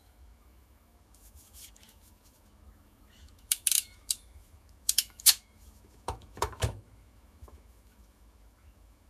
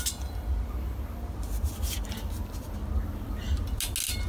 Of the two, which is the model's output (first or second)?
first